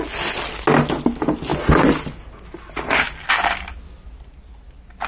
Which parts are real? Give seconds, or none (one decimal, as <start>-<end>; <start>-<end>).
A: 0.0-5.1